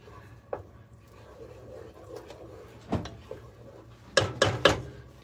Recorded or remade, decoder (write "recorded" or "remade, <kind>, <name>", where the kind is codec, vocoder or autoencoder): recorded